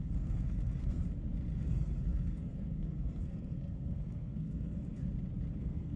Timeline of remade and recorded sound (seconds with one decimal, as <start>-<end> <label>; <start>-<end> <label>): 0.0-1.0 remade; 1.0-1.6 recorded; 1.6-5.0 remade; 5.0-5.6 recorded; 5.6-6.0 remade